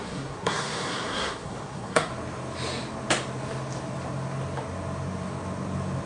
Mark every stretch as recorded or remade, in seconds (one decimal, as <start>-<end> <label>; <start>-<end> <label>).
0.0-2.1 remade; 2.1-6.1 recorded